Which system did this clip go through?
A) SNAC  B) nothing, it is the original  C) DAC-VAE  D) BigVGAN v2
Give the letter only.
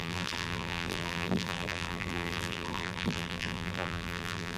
D